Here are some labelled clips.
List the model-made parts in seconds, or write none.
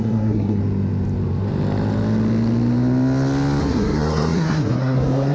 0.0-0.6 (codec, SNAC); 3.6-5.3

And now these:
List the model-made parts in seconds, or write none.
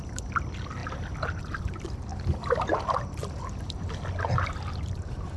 none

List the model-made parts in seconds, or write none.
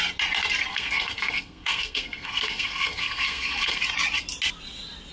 0.7-3.8 (codec, SNAC)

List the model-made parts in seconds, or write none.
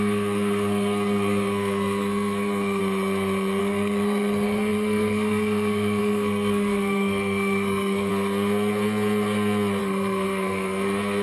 0.0-2.8 (codec, SNAC); 3.6-8.1; 9.8-11.2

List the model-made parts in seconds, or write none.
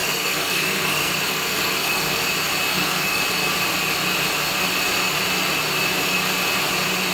0.0-2.2 (codec, SNAC); 2.7-3.2